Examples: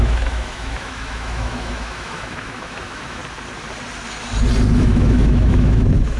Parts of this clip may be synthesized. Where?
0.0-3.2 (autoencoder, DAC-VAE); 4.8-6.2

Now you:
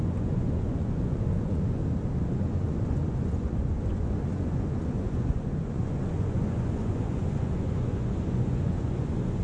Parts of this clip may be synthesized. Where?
0.0-1.8 (vocoder, Vocos); 2.3-9.4

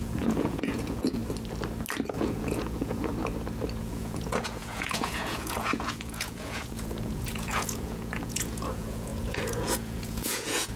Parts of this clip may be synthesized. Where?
0.0-1.2 (vocoder, Vocos); 2.1-3.1; 3.8-10.8

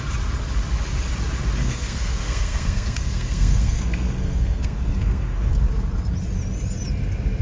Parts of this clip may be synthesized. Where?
1.6-5.5 (codec, SNAC)

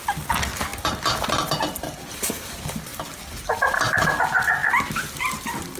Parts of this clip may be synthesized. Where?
none

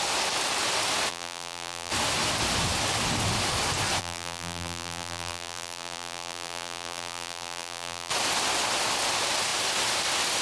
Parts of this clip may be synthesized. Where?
1.1-1.9 (vocoder, BigVGAN v2); 4.0-8.1

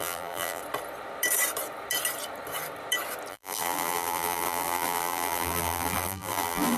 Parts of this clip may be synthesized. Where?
0.0-0.6 (vocoder, BigVGAN v2); 3.3-6.8